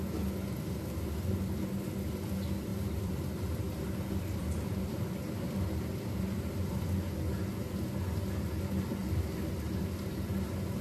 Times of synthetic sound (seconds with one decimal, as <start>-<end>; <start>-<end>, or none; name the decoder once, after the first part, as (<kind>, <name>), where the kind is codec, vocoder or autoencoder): 2.7-6.5 (vocoder, BigVGAN v2); 9.0-9.5